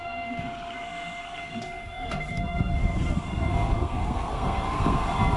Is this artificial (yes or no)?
yes